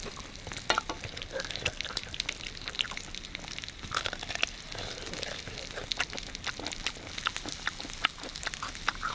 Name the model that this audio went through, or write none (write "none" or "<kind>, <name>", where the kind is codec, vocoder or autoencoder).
none